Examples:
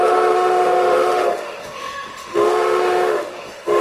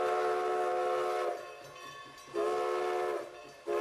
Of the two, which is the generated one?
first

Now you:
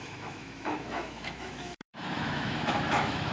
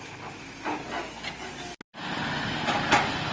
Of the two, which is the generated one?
first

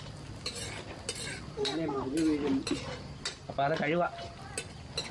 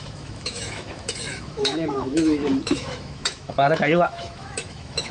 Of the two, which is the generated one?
second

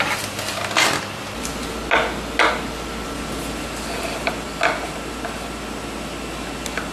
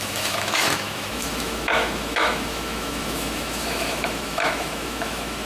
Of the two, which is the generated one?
second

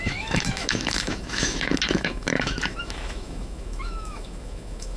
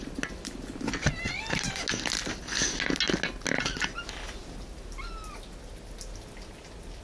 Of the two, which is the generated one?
first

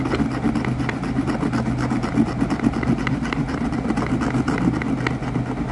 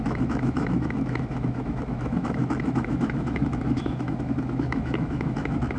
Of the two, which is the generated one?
second